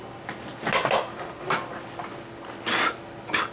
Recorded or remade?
recorded